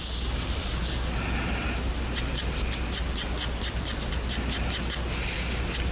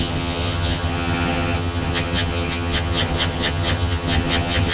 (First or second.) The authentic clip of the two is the first